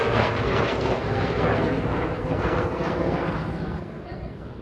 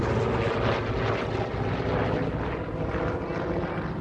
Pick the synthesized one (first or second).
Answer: first